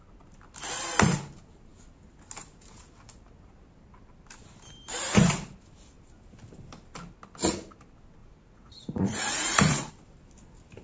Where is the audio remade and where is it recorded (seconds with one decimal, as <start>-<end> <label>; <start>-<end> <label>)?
0.0-8.2 recorded; 8.2-9.9 remade; 9.9-10.8 recorded